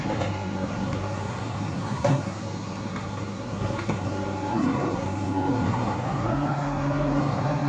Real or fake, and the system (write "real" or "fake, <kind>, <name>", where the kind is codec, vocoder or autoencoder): fake, codec, SNAC